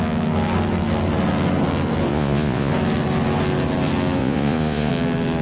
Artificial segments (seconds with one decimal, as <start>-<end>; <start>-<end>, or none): 2.1-2.7; 4.2-4.9